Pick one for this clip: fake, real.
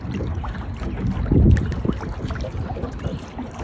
real